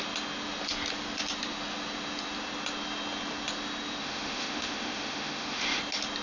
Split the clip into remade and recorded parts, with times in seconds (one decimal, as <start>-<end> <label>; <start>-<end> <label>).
0.0-4.0 recorded; 4.0-5.8 remade; 5.8-6.2 recorded